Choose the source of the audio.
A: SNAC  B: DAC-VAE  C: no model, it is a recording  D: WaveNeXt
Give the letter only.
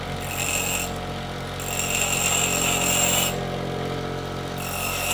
C